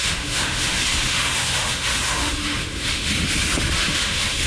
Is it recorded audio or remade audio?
remade